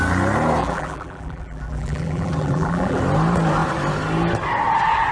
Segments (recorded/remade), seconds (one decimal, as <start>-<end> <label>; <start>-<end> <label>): 0.0-0.6 recorded; 0.6-3.0 remade; 3.0-5.1 recorded